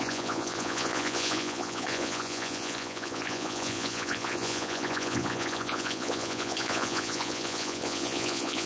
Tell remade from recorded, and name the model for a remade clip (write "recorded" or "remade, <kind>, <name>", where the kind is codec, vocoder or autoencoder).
remade, vocoder, Vocos